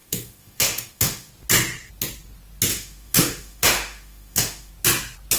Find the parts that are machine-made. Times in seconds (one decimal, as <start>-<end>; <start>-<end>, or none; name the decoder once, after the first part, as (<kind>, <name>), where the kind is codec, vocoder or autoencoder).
0.0-1.3 (autoencoder, DAC-VAE); 2.7-4.7